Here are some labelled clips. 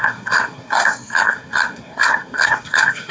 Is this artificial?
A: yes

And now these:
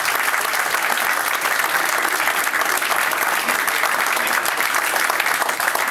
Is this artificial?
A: no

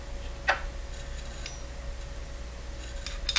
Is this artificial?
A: no